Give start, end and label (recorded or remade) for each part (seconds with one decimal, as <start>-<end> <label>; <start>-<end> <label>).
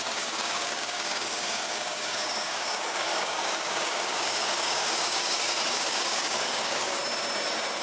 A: 0.0-7.0 remade; 7.0-7.8 recorded